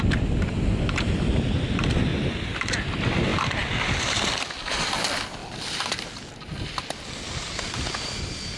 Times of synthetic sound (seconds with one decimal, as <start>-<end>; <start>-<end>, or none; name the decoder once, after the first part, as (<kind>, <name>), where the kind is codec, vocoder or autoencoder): 3.3-4.9 (vocoder, BigVGAN v2); 5.4-8.6